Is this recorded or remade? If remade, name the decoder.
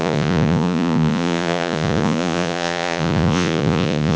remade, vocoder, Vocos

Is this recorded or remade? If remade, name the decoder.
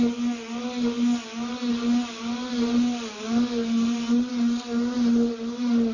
recorded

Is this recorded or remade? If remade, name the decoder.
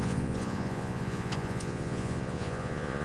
remade, vocoder, Vocos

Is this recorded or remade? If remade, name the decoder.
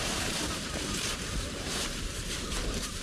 remade, vocoder, BigVGAN v2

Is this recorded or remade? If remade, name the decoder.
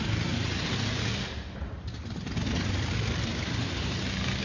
recorded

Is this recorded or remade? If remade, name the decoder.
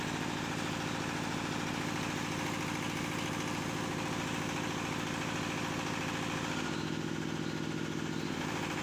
recorded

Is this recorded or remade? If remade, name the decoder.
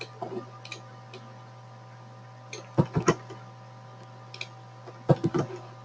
recorded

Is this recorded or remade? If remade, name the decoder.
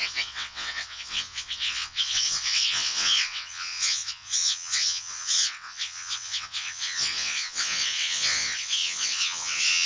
remade, vocoder, WaveNeXt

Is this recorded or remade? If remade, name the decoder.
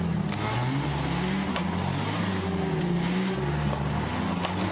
recorded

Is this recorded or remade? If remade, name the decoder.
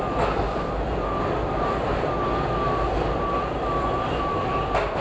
recorded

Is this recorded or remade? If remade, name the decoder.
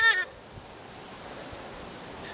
recorded